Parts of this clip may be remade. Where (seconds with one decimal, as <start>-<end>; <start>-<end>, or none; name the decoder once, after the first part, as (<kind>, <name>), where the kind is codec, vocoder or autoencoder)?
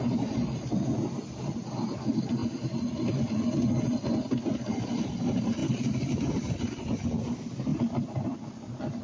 2.4-3.4 (vocoder, BigVGAN v2); 5.6-6.5; 7.7-9.0